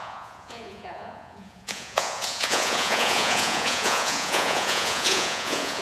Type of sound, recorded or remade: remade